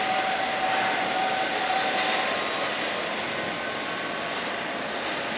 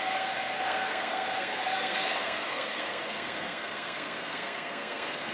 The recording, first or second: first